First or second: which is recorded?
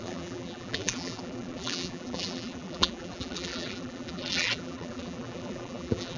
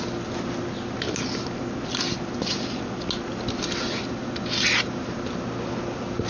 second